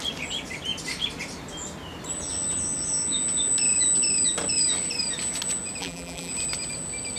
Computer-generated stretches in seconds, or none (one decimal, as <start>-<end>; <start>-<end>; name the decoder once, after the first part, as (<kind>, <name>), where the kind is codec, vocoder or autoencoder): 5.8-6.3 (vocoder, BigVGAN v2)